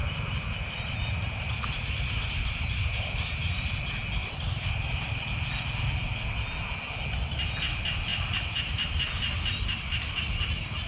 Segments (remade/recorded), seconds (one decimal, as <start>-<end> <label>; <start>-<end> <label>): 0.0-3.8 remade; 3.8-4.2 recorded; 4.2-5.3 remade; 5.3-8.1 recorded; 8.1-8.9 remade; 8.9-10.9 recorded